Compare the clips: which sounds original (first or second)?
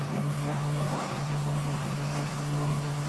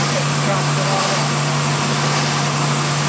second